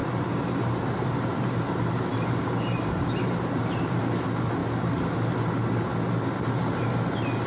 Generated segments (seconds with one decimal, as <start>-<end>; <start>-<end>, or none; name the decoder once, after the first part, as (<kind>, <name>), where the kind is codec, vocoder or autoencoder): 0.0-4.0 (vocoder, BigVGAN v2)